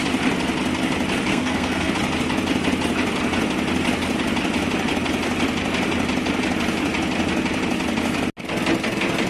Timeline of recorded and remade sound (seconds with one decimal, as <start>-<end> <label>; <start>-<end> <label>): 0.0-1.3 recorded; 1.3-1.9 remade; 1.9-9.3 recorded